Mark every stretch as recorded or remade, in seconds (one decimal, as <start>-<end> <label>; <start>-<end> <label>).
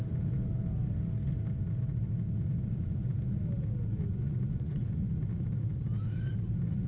0.0-4.1 recorded; 4.1-5.1 remade; 5.1-6.9 recorded